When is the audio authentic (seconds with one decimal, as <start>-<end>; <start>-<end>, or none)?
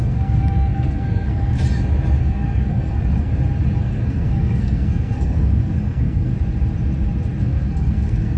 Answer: 1.6-2.2; 3.3-3.8; 6.3-7.4